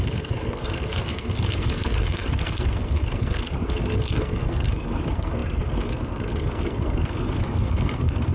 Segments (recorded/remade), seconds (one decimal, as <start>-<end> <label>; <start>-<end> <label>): 0.0-8.3 remade